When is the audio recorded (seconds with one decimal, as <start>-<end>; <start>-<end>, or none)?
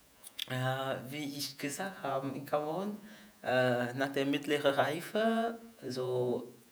0.4-1.4; 3.5-4.7